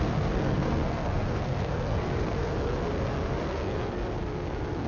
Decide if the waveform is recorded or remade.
remade